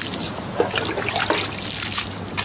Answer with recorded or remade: recorded